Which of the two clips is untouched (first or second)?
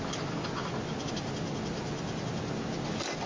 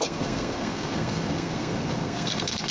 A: first